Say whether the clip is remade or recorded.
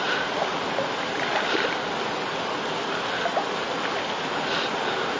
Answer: recorded